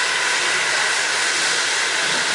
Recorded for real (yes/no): yes